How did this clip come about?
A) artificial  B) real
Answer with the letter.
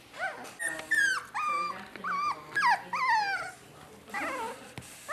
B